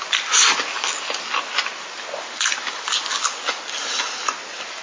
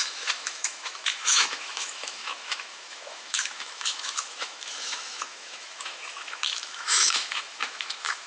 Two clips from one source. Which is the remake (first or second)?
second